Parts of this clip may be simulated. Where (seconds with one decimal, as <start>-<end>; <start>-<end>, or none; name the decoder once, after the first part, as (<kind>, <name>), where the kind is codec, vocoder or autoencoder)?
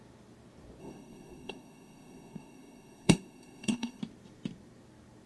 0.8-4.0 (codec, SNAC)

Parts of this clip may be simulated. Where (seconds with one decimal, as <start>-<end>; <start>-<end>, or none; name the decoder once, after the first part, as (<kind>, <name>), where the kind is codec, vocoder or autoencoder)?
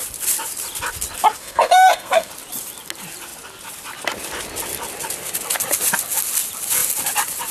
1.4-2.3 (codec, SNAC)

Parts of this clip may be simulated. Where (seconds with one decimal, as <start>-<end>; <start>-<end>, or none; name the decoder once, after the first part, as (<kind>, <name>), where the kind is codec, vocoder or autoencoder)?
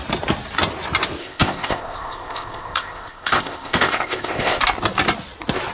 1.2-4.6 (codec, ZipCodec)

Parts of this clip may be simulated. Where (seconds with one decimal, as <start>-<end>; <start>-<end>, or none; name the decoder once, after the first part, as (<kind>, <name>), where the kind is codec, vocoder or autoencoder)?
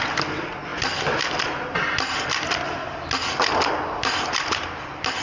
none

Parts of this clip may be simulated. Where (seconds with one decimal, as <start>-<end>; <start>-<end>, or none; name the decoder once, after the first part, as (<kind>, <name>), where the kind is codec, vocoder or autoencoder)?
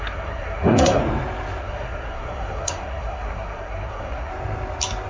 0.0-1.0 (codec, SNAC); 1.6-4.3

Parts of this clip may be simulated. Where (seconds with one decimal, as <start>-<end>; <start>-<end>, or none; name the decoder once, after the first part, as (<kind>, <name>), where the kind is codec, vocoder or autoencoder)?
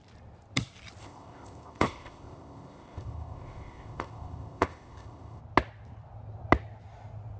1.0-5.4 (codec, ZipCodec)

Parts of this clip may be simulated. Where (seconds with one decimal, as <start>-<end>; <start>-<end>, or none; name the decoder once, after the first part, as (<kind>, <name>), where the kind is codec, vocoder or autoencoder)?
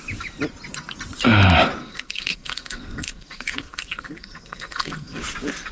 1.8-5.2 (codec, SNAC)